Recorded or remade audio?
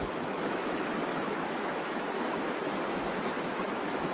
remade